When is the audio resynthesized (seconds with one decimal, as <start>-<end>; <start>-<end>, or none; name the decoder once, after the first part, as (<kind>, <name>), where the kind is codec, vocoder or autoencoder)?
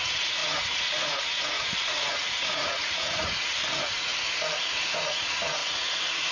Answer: 0.0-4.1 (vocoder, Vocos); 4.7-6.3